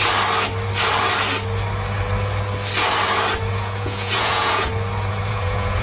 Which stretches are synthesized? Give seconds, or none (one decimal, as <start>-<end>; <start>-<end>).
3.5-4.7; 5.3-5.8